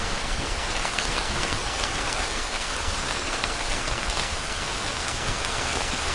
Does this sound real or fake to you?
fake